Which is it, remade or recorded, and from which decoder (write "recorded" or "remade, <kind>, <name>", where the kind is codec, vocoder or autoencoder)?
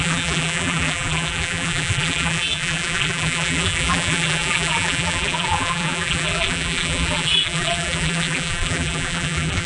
remade, vocoder, BigVGAN v2